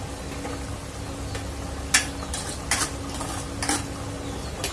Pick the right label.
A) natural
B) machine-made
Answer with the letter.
A